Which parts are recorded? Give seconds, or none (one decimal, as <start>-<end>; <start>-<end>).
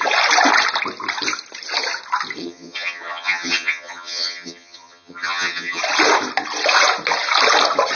0.0-2.4; 5.8-8.0